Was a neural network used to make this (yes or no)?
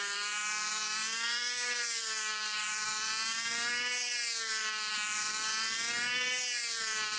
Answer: yes